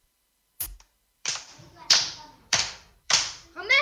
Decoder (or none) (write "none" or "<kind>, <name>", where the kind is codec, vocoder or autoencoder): vocoder, BigVGAN v2